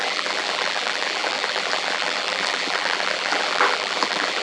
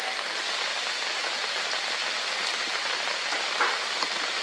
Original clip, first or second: second